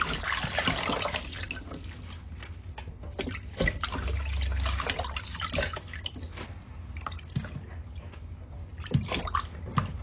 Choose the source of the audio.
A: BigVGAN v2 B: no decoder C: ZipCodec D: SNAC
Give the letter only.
B